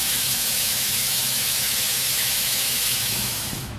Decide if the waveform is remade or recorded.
remade